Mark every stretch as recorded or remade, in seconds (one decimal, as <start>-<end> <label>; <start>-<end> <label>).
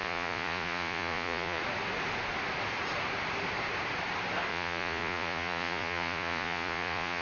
0.0-1.6 remade; 1.6-4.5 recorded; 4.5-7.2 remade